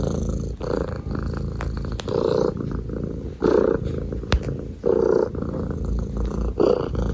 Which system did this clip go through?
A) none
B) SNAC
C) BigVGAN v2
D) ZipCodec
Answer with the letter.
A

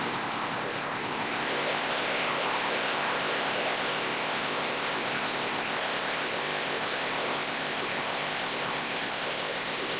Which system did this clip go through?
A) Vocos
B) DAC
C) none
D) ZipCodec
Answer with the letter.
D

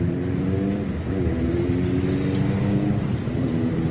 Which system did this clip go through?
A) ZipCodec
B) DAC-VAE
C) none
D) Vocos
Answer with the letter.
C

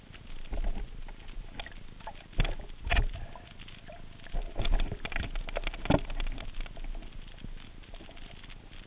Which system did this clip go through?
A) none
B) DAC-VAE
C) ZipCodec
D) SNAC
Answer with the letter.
A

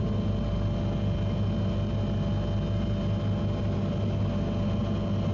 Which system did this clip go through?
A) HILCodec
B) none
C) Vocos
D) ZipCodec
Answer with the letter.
B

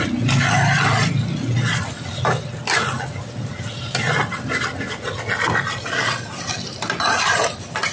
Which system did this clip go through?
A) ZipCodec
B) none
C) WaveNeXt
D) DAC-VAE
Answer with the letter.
B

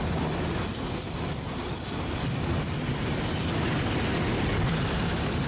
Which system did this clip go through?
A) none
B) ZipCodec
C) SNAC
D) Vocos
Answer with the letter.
A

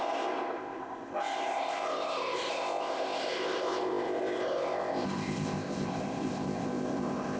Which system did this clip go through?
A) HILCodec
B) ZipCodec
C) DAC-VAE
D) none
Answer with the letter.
B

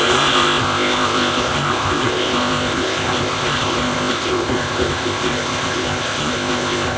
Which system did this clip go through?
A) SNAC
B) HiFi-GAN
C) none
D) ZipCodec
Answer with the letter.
D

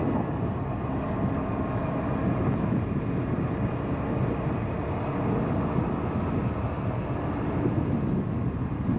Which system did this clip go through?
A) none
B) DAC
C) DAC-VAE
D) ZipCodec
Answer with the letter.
A